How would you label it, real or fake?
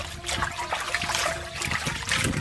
real